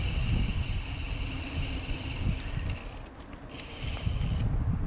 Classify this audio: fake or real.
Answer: fake